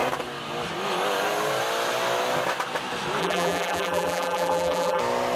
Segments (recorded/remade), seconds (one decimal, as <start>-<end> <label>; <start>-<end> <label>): 0.0-3.2 recorded; 3.2-5.0 remade; 5.0-5.4 recorded